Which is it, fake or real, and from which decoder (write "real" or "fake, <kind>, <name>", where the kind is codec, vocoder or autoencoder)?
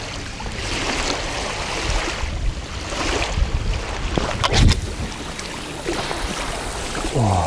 real